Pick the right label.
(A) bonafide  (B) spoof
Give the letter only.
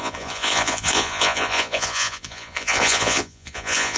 B